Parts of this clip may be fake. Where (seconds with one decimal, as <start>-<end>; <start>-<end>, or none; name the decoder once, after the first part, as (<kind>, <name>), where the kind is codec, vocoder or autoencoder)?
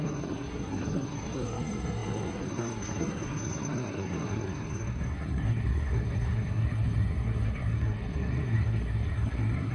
0.0-9.7 (codec, SNAC)